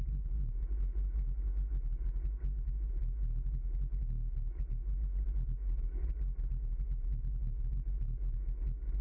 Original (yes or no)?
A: yes